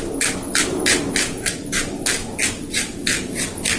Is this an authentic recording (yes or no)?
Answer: yes